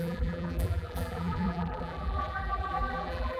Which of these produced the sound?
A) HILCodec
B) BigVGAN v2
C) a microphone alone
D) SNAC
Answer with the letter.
B